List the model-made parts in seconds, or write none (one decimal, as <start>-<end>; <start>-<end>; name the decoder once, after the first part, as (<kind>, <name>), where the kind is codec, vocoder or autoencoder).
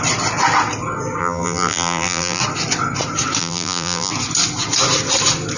1.2-2.4 (vocoder, BigVGAN v2); 3.4-4.1